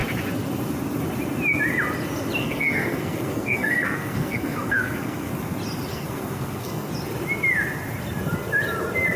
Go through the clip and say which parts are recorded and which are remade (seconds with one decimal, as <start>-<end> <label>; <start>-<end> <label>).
0.0-2.4 recorded; 2.4-5.3 remade; 5.3-5.9 recorded; 5.9-6.9 remade; 6.9-9.2 recorded